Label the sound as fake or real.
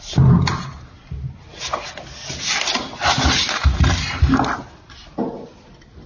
real